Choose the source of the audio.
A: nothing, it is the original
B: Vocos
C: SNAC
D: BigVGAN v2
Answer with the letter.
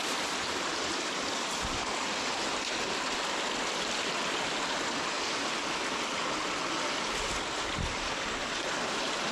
A